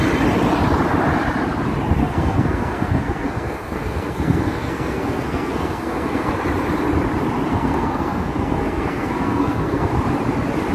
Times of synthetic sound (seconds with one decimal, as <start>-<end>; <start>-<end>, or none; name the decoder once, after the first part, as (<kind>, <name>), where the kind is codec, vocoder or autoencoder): 2.0-6.3 (codec, SNAC); 7.5-9.9